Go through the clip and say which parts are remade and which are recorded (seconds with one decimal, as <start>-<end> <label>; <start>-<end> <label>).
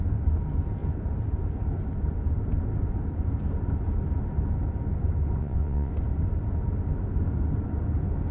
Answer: 0.0-5.4 recorded; 5.4-5.9 remade; 5.9-8.3 recorded